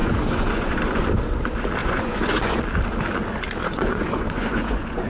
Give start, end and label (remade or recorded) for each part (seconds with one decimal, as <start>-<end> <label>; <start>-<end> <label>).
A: 0.0-1.0 remade; 1.0-1.8 recorded; 1.8-2.6 remade; 2.6-3.6 recorded; 3.6-5.1 remade